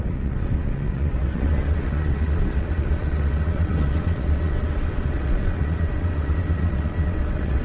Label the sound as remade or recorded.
remade